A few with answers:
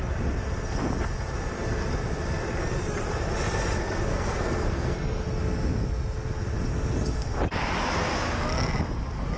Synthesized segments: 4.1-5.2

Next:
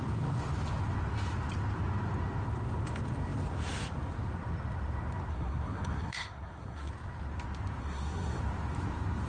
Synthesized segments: 5.3-6.9; 7.8-8.4

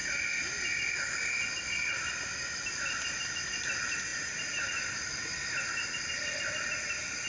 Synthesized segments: none

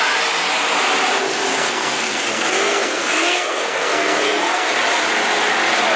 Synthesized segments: 1.5-4.7

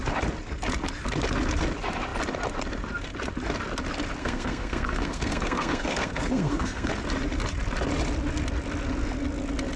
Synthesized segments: 4.2-6.9

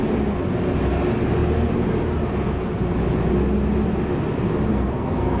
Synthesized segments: 4.7-5.4

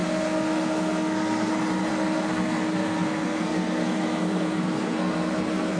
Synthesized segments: 0.0-1.5; 1.9-5.8